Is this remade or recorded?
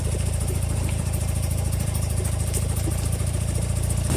remade